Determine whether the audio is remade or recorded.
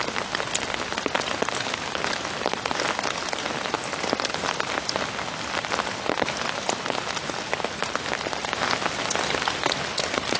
recorded